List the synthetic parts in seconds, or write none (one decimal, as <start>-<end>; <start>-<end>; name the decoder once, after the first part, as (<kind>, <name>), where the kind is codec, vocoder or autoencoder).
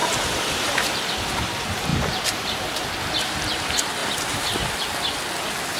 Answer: 0.0-1.0 (vocoder, BigVGAN v2); 1.9-2.9; 4.0-4.8